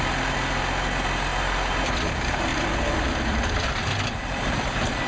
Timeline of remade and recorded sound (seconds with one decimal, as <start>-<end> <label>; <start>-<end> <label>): 0.0-2.5 recorded; 2.5-5.1 remade